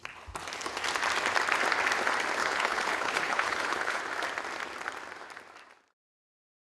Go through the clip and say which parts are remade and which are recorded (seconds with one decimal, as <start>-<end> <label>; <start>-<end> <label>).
0.0-2.4 recorded; 2.4-4.0 remade; 4.0-6.7 recorded